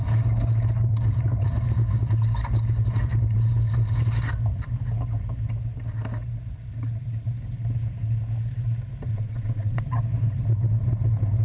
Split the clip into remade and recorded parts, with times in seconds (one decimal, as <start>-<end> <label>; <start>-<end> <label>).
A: 0.0-9.1 recorded; 9.1-9.8 remade; 9.8-11.4 recorded